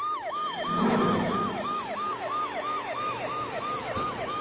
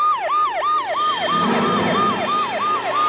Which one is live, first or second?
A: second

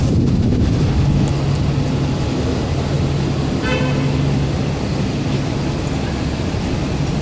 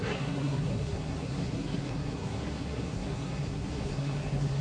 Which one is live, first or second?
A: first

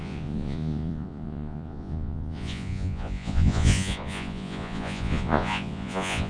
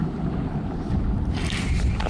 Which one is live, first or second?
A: second